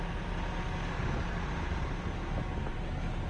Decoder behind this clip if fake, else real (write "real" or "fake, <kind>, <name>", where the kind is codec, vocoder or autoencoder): real